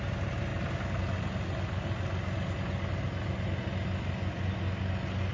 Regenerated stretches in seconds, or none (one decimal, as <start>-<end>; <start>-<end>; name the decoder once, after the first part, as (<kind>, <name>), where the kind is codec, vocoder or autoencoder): none